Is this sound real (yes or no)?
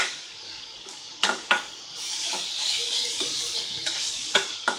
no